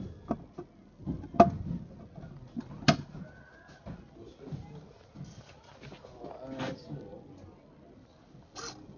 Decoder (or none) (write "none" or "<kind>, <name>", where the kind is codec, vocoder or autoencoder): none